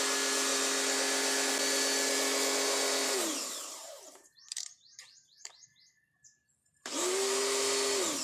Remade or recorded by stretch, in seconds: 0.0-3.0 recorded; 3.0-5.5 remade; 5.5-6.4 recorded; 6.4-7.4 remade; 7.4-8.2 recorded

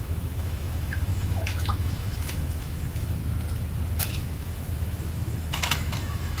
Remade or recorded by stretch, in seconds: 0.0-3.2 remade; 3.2-4.0 recorded; 4.0-6.4 remade

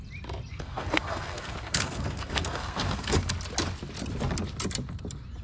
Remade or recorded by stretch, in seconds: 0.0-0.5 recorded; 0.5-3.3 remade; 3.3-5.4 recorded

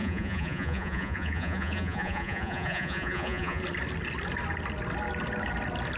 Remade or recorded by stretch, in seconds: 0.0-3.6 remade; 3.6-6.0 recorded

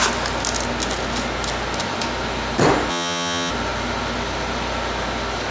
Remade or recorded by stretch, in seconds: 0.0-2.9 recorded; 2.9-3.5 remade; 3.5-5.5 recorded